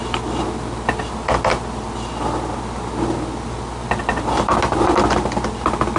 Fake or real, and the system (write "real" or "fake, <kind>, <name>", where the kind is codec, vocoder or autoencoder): real